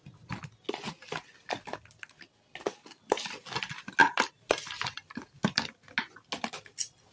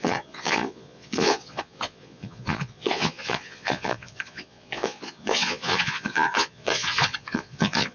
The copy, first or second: second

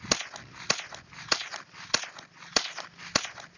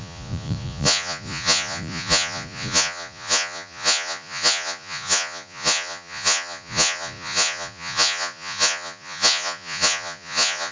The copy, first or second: second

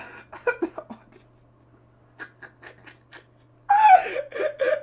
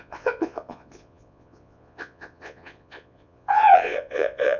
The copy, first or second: second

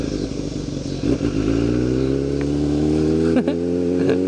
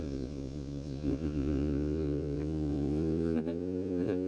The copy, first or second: second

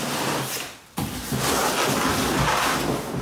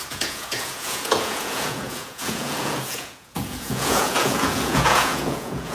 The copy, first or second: second